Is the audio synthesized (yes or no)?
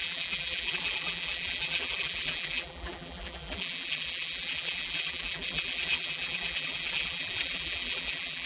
yes